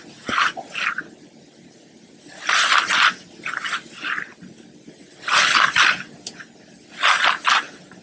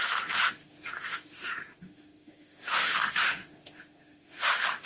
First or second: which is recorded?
first